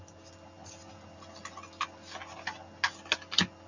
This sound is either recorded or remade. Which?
recorded